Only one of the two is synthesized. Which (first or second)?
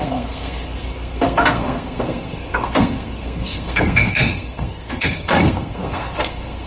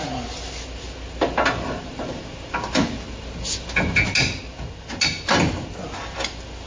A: first